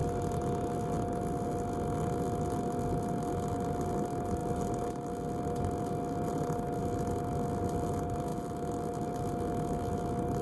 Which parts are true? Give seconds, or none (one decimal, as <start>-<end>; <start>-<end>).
0.0-10.4